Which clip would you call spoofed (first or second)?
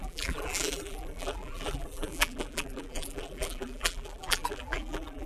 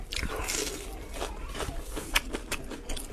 first